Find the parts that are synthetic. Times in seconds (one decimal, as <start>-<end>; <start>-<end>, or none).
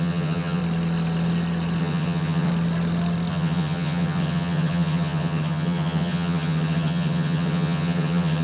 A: 0.0-0.6; 1.8-2.5; 3.3-8.4